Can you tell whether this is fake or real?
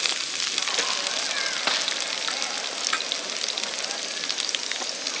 real